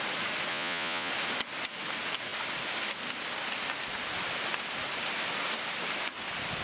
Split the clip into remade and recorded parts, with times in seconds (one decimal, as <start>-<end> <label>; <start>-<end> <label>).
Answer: 0.0-0.5 recorded; 0.5-1.1 remade; 1.1-6.6 recorded